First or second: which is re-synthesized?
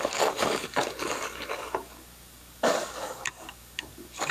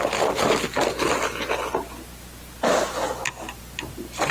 first